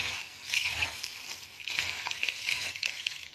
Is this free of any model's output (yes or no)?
no